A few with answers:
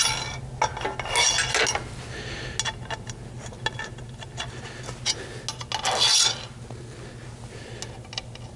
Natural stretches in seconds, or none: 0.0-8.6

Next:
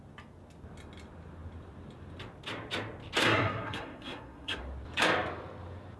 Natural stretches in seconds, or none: 0.0-3.2; 4.6-6.0

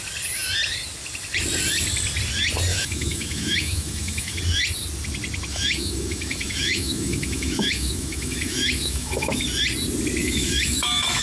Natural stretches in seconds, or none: 0.0-2.7; 4.4-5.5; 9.4-10.2

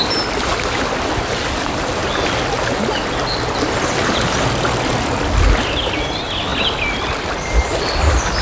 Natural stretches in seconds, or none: 0.0-8.4

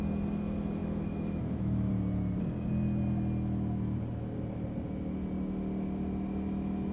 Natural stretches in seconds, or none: 0.0-0.8; 1.9-6.9